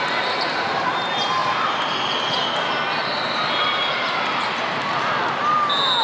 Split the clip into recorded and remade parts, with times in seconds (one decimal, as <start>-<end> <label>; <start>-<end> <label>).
0.0-6.0 recorded